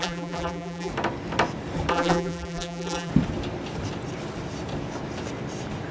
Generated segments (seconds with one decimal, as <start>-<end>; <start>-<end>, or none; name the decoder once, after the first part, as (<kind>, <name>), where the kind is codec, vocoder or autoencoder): 0.0-0.9 (vocoder, BigVGAN v2); 1.9-3.1